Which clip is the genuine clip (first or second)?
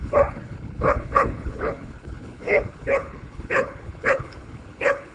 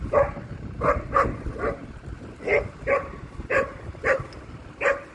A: second